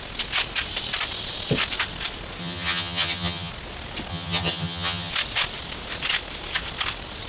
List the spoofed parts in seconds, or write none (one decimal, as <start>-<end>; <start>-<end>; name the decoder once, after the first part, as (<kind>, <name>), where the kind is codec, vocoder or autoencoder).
2.4-3.5 (vocoder, HiFi-GAN); 4.1-5.1